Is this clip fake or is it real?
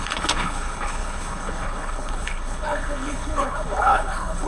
fake